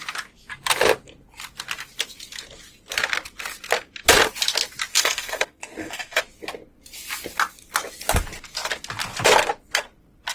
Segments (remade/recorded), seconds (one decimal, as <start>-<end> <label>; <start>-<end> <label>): 0.0-4.9 recorded; 4.9-6.2 remade; 6.2-10.3 recorded